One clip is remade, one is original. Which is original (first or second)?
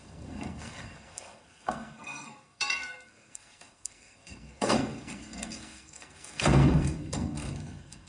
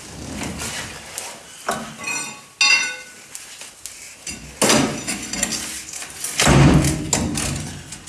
second